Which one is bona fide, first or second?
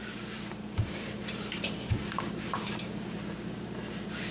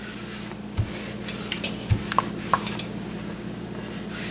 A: second